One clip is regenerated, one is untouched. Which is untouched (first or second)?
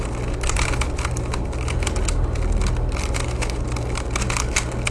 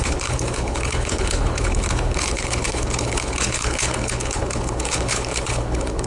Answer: first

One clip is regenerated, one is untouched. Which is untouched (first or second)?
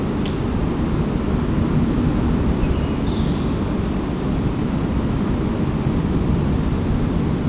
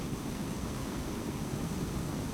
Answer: first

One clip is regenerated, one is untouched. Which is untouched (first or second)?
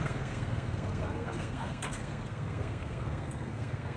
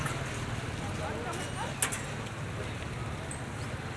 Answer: second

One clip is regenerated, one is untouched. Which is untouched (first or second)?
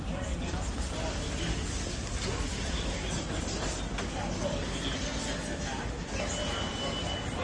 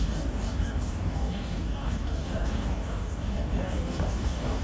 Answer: first